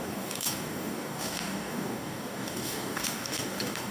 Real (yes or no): no